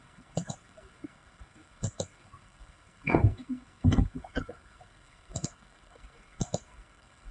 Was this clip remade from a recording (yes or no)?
yes